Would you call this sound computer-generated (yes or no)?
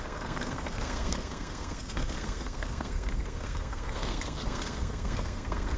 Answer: yes